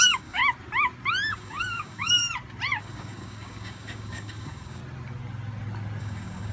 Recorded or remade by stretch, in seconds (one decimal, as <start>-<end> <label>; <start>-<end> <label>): 0.0-0.4 remade; 0.4-1.3 recorded; 1.3-2.2 remade; 2.2-2.8 recorded; 2.8-4.8 remade; 4.8-6.0 recorded; 6.0-6.5 remade